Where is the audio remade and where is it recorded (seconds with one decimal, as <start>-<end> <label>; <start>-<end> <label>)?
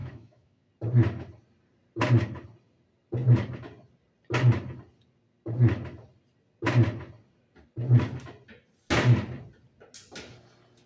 0.0-0.7 remade; 0.7-10.9 recorded